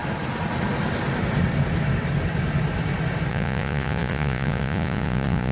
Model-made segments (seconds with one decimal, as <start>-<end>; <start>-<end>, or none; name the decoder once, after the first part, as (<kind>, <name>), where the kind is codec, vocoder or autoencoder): 3.3-5.5 (vocoder, Vocos)